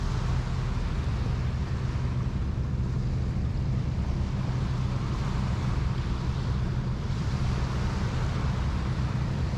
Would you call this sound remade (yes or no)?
no